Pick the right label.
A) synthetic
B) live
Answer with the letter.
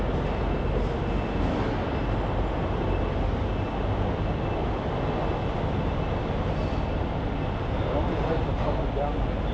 B